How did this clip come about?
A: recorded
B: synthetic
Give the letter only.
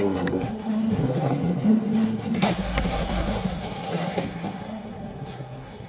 B